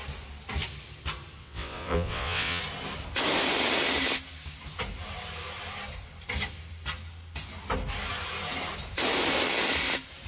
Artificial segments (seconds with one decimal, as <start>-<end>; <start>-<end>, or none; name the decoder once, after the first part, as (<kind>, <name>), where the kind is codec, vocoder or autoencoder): 1.4-2.6 (vocoder, WaveNeXt)